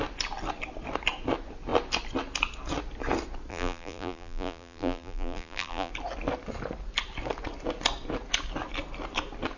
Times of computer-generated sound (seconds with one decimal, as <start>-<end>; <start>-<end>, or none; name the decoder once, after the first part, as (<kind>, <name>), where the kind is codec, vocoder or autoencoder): 3.5-5.9 (vocoder, BigVGAN v2)